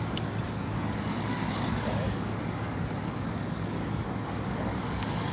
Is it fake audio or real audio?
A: fake